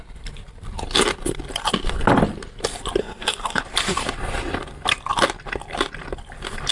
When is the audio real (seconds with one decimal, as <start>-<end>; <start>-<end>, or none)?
0.0-3.0; 3.6-6.7